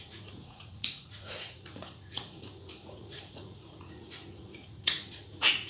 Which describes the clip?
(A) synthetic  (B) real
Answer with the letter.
A